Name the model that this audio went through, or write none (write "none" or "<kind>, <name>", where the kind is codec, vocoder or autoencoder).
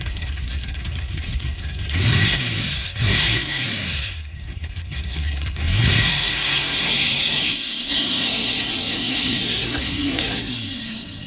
codec, SNAC